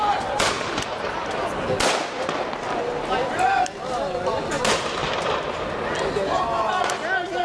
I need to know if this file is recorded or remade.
recorded